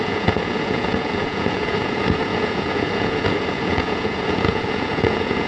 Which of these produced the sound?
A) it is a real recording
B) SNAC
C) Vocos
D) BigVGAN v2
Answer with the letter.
C